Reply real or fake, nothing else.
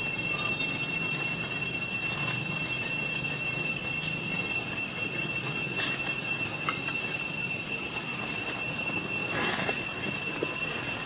real